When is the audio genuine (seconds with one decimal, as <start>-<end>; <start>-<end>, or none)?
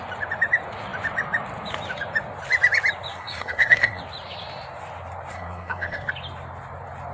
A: 0.0-3.1; 4.0-5.3; 6.1-7.1